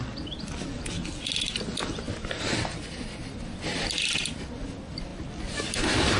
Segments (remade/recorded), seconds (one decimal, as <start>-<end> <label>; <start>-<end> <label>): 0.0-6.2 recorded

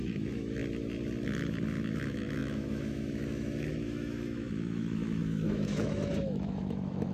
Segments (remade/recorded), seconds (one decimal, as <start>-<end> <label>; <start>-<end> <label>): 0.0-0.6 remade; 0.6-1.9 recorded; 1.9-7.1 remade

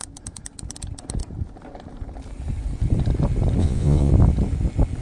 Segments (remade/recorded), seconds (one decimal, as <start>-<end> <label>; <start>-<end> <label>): 0.0-3.6 recorded; 3.6-4.1 remade; 4.1-5.0 recorded

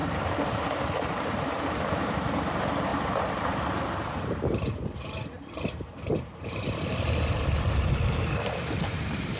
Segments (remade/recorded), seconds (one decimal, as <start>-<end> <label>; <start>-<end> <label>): 0.0-9.4 remade

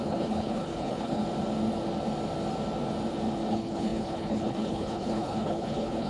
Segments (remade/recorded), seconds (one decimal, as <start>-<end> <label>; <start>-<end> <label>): 0.0-1.2 remade; 1.2-3.5 recorded; 3.5-6.1 remade

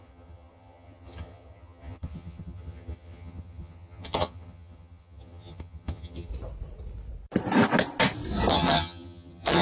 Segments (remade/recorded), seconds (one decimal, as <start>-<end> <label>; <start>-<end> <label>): 0.0-6.3 remade; 6.3-8.5 recorded; 8.5-9.6 remade

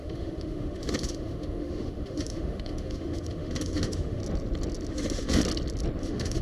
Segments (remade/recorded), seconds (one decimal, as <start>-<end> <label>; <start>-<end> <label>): 0.0-4.2 remade; 4.2-4.9 recorded; 4.9-5.4 remade; 5.4-6.0 recorded; 6.0-6.4 remade

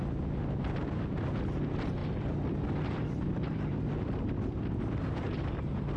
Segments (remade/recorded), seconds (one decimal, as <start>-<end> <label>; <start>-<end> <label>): 0.0-2.0 recorded; 2.0-5.6 remade; 5.6-6.0 recorded